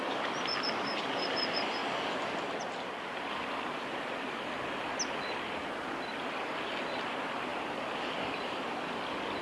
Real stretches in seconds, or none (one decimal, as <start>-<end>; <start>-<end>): 0.0-9.4